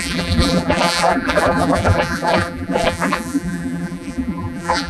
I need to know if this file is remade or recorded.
remade